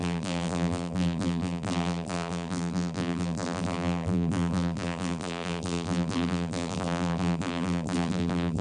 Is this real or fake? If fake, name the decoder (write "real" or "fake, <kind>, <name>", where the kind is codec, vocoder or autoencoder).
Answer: fake, vocoder, BigVGAN v2